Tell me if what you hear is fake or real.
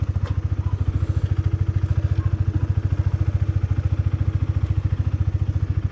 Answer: real